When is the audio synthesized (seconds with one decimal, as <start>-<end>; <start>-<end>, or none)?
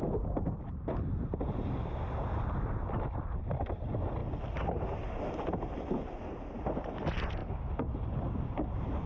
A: none